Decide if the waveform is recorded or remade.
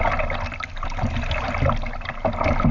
recorded